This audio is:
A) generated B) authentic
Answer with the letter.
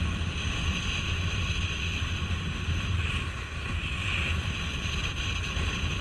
B